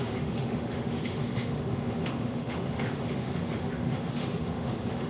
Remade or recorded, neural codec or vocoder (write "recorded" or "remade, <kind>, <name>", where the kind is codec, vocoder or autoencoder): remade, autoencoder, DAC-VAE